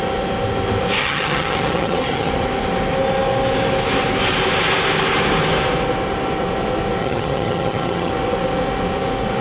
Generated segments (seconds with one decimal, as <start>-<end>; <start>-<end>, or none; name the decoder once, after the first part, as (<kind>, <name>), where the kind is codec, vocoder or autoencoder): 1.0-2.3 (vocoder, HiFi-GAN); 7.0-8.1